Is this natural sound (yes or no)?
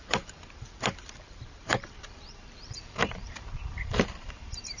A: no